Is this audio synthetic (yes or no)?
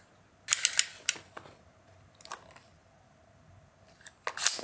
no